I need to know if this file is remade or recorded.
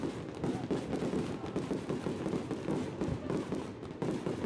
recorded